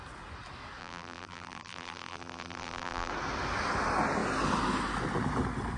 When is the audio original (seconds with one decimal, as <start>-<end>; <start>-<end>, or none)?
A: 0.0-0.8; 3.1-5.8